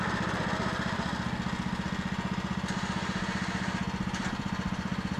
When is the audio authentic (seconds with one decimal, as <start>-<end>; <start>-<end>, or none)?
1.1-4.2